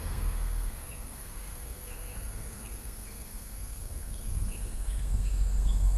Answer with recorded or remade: remade